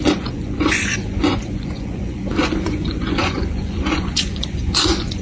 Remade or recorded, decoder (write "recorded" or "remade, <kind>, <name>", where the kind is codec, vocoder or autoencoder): remade, vocoder, Vocos